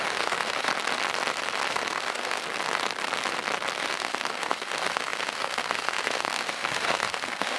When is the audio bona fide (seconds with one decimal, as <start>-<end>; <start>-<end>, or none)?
0.7-1.7; 2.4-3.8